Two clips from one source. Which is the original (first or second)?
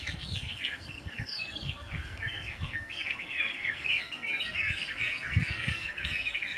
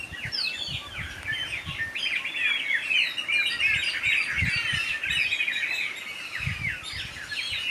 second